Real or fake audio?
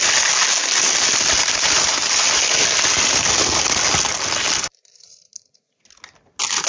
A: real